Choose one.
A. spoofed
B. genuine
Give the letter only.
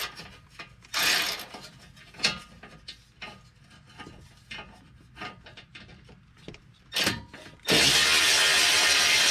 B